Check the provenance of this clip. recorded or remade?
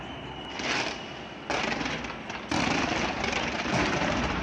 remade